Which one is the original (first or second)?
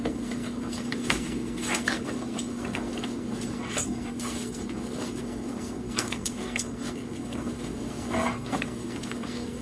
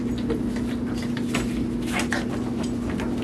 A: second